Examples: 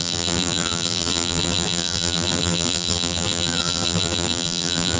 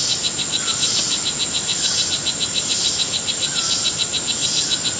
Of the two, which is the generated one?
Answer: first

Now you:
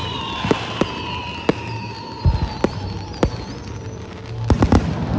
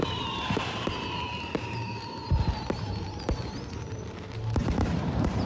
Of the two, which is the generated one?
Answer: second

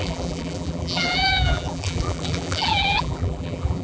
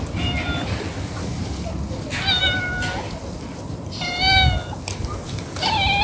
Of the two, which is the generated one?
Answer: first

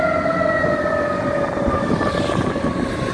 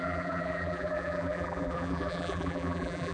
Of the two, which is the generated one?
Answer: second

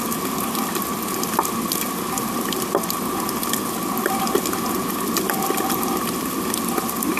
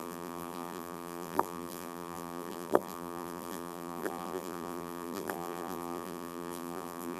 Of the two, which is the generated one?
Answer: second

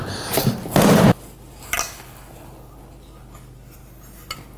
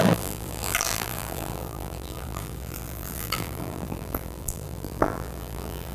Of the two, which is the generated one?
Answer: second